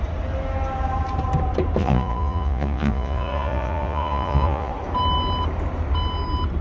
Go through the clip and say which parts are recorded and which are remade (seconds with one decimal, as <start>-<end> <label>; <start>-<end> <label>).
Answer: 0.0-1.8 recorded; 1.8-4.7 remade; 4.7-6.6 recorded